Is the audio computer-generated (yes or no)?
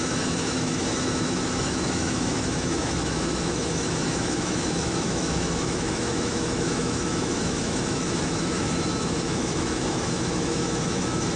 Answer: yes